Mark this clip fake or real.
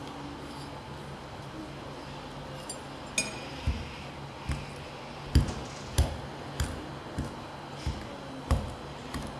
real